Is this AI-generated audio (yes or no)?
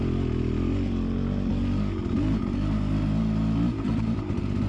no